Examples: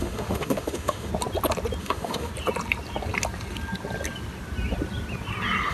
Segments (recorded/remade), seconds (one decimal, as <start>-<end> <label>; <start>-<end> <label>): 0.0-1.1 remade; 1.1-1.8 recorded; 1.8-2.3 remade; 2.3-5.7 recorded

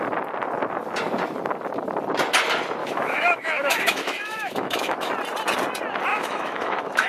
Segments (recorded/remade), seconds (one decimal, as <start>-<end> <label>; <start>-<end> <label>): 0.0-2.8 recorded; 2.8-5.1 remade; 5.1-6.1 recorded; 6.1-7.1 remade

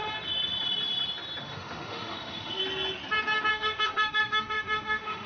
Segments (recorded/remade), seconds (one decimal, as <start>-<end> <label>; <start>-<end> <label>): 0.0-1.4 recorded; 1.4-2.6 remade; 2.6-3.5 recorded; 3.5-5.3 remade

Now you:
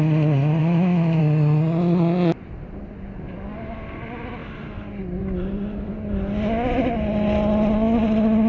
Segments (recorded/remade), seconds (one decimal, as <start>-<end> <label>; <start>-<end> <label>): 0.0-0.6 recorded; 0.6-1.2 remade; 1.2-8.5 recorded

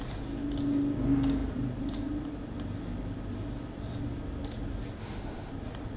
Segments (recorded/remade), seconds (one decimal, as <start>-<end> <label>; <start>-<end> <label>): 0.0-5.0 recorded; 5.0-5.5 remade; 5.5-6.0 recorded